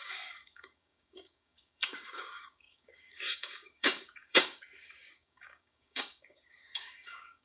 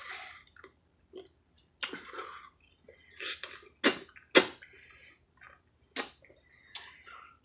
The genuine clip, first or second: second